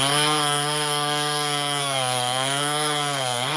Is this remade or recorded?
remade